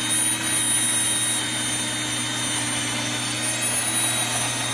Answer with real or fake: real